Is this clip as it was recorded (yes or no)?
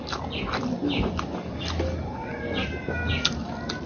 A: yes